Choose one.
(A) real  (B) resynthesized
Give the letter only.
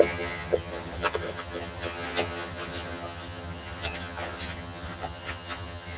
B